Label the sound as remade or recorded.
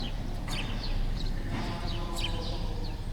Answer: remade